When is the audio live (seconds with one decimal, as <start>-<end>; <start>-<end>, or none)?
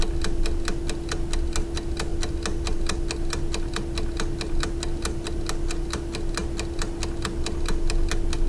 0.0-8.5